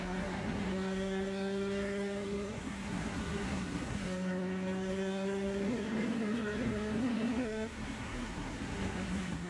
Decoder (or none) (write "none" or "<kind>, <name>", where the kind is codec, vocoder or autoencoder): codec, SNAC